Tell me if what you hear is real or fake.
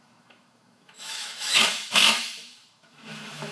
fake